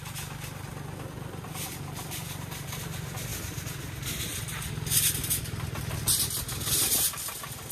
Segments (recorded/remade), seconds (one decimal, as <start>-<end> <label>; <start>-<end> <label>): 0.0-7.7 recorded